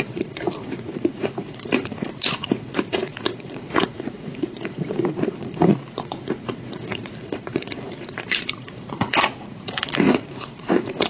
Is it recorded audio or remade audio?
remade